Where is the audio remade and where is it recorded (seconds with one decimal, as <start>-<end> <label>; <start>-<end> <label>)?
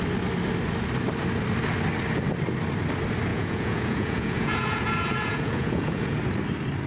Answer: 0.0-3.3 recorded; 3.3-6.2 remade; 6.2-6.9 recorded